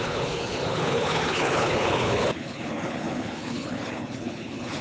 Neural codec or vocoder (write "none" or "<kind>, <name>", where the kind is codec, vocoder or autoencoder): codec, HILCodec